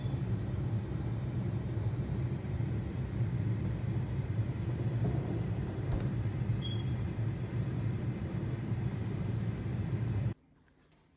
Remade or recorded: remade